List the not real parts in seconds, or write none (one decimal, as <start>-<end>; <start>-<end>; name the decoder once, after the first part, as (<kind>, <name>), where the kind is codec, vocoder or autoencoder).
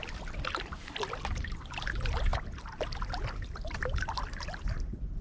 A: 0.0-2.3 (vocoder, BigVGAN v2); 3.7-5.2